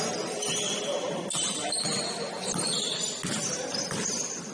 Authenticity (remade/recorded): recorded